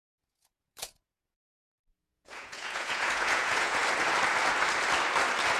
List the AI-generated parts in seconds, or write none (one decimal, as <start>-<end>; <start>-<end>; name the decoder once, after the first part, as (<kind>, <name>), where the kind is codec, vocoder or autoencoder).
0.0-3.8 (vocoder, Vocos)